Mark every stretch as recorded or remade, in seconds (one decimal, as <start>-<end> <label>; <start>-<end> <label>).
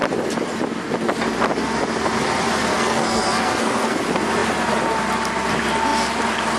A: 0.0-2.6 recorded; 2.6-4.0 remade; 4.0-6.6 recorded